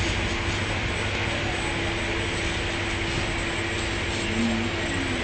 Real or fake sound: real